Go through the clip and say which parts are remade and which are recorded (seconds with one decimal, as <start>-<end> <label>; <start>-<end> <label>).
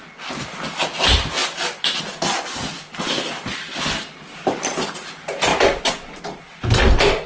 0.0-7.3 recorded